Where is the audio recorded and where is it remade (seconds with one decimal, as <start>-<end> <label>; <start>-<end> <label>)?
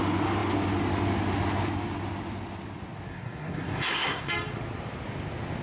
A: 0.0-3.1 recorded; 3.1-4.3 remade; 4.3-5.6 recorded